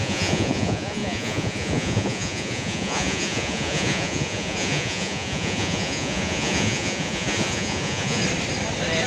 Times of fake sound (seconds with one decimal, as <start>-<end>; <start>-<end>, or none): 0.0-8.2